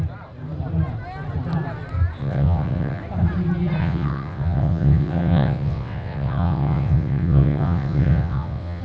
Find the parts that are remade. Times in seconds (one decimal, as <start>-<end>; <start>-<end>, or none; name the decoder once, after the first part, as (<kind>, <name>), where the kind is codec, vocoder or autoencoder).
2.2-3.0 (vocoder, WaveNeXt); 3.8-8.8